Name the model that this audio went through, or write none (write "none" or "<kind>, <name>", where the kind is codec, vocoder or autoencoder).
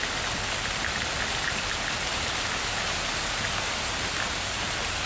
none